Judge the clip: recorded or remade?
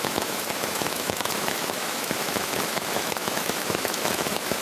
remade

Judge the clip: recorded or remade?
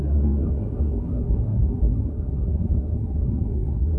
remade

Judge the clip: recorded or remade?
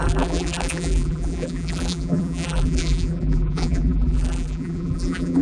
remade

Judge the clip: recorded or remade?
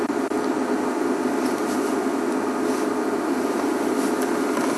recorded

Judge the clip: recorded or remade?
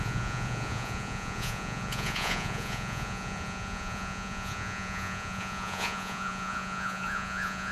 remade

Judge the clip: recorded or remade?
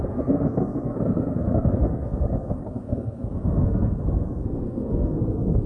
remade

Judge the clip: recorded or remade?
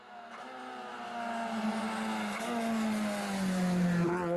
recorded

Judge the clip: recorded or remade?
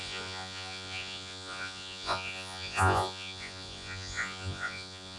remade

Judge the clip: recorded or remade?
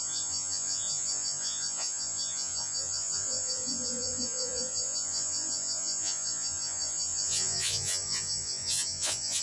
remade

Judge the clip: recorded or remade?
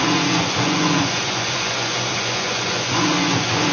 remade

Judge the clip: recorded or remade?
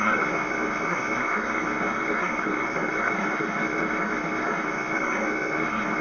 remade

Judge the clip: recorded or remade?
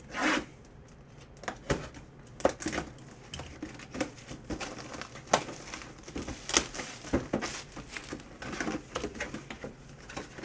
recorded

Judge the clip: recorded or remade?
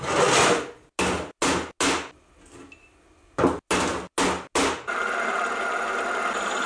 recorded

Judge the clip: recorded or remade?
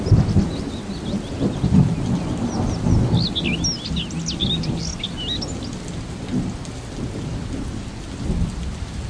recorded